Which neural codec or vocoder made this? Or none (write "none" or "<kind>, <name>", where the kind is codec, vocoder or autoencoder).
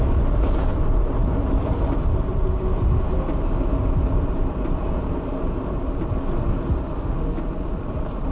none